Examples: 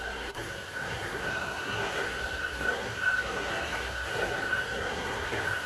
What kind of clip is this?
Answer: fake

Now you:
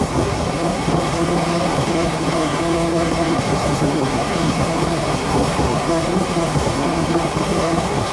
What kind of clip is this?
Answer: fake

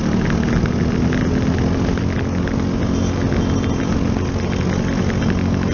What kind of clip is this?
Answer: real